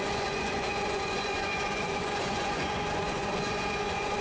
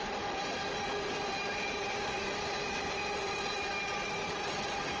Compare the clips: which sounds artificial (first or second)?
first